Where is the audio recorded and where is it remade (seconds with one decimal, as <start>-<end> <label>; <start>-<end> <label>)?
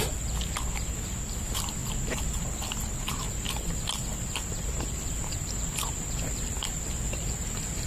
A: 0.0-7.9 recorded